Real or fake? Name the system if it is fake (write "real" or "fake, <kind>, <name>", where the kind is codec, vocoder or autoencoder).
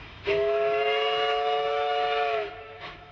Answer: fake, autoencoder, DAC-VAE